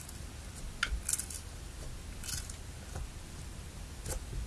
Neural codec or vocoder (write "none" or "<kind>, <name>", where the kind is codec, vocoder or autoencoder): none